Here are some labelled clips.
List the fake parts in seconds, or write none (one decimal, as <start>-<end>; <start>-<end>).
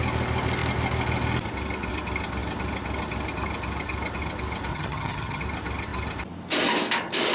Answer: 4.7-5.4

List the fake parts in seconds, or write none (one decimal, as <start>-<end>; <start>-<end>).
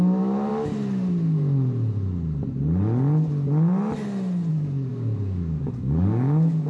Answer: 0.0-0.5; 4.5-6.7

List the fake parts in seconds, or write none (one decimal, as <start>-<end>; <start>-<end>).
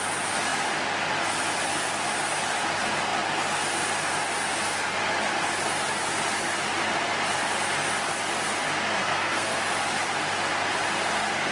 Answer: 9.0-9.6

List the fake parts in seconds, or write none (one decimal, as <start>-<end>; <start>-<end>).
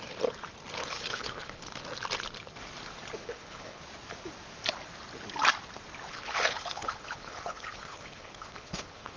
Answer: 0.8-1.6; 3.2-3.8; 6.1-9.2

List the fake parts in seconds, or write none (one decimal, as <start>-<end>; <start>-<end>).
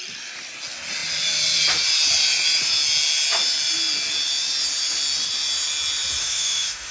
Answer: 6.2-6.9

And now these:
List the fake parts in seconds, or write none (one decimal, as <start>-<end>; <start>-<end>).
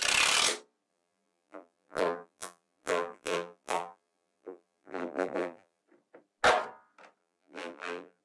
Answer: 0.9-5.8; 7.2-8.2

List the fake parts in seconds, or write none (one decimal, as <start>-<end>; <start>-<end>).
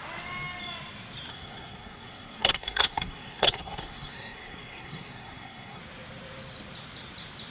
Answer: 1.3-5.8